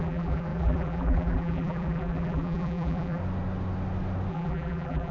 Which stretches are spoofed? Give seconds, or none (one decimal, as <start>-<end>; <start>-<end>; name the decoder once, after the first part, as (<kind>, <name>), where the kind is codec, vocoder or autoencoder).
0.0-3.2 (vocoder, BigVGAN v2); 4.3-5.1